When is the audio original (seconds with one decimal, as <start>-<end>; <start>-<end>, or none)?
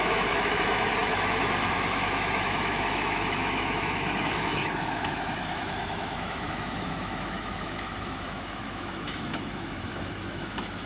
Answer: none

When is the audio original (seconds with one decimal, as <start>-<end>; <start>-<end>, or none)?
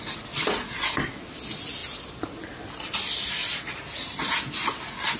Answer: 0.0-5.2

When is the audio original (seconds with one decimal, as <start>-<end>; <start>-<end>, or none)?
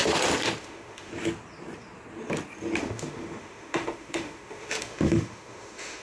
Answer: 0.0-0.6; 1.1-2.8